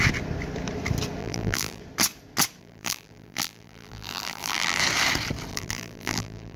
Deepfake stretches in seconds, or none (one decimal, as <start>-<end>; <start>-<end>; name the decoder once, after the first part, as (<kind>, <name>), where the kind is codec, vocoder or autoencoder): 1.2-1.8 (vocoder, BigVGAN v2); 2.6-4.8; 5.5-6.6